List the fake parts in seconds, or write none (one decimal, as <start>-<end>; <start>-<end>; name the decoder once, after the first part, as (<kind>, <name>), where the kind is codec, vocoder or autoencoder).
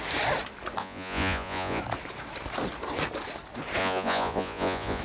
0.8-1.8 (vocoder, Vocos); 3.8-5.0